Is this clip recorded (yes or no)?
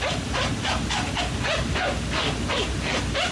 yes